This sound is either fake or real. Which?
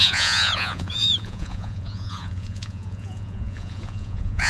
fake